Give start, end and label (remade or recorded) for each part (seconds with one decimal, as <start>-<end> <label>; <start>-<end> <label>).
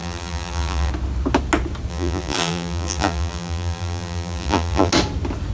0.0-0.9 remade; 0.9-1.9 recorded; 1.9-4.9 remade; 4.9-5.5 recorded